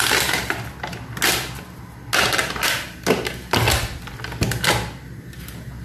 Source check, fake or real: real